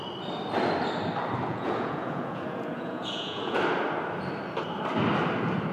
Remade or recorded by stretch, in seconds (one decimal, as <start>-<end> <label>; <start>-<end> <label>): 0.0-1.5 recorded; 1.5-3.6 remade; 3.6-5.7 recorded